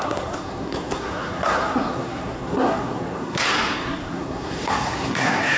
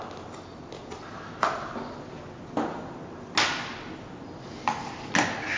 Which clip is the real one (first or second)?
second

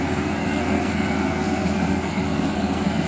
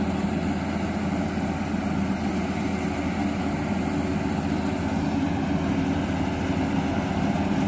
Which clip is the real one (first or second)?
second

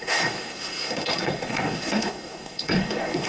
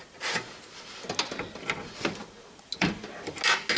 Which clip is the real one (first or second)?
second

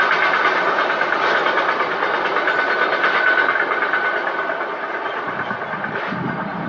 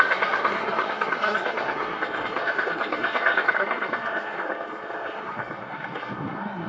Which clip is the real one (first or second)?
first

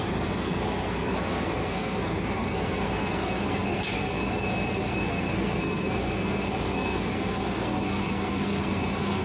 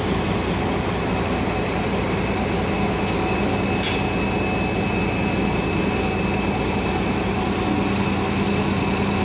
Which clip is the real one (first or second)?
second